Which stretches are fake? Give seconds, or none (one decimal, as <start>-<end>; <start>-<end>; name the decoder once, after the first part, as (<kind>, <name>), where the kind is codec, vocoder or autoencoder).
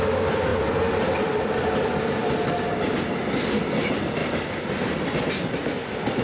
4.2-4.7 (vocoder, BigVGAN v2)